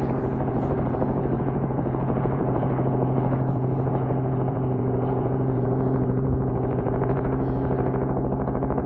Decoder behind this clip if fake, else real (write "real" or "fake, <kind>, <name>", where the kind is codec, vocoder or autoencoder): fake, vocoder, Vocos